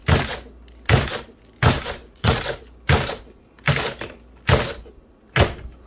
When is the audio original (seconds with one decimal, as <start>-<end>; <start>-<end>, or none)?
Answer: 0.0-2.0; 2.6-5.9